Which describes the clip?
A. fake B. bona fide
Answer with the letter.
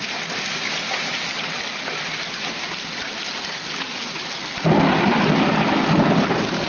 B